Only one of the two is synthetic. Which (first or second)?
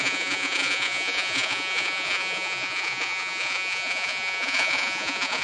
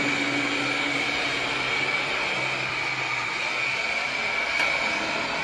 first